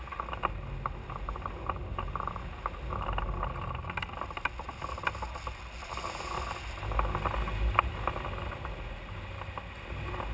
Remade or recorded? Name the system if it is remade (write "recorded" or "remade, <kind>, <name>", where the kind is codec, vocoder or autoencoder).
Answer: recorded